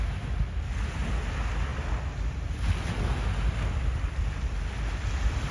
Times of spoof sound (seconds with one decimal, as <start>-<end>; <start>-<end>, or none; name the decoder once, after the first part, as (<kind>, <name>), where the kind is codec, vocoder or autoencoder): none